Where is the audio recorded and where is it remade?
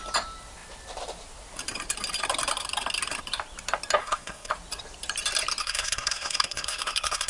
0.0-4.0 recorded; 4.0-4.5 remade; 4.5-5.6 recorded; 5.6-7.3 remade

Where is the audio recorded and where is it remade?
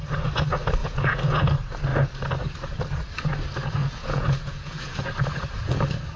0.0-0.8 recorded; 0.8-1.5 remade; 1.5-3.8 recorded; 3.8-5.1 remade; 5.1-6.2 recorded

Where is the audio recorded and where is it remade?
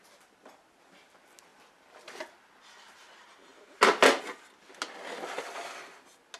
0.0-6.4 recorded